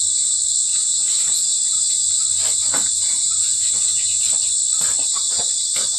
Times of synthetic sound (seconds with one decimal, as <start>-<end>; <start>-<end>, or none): 0.7-1.5; 2.8-4.2